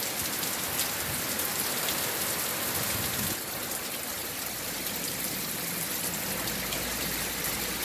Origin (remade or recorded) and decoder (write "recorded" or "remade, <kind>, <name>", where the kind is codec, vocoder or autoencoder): recorded